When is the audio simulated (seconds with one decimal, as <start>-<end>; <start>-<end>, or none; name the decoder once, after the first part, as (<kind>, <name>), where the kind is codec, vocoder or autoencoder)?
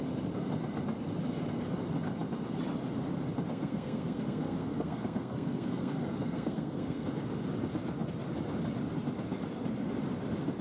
3.5-7.1 (codec, SNAC)